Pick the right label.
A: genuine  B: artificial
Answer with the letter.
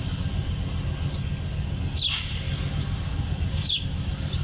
A